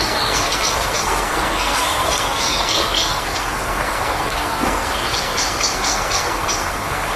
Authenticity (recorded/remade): remade